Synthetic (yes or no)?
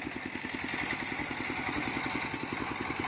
no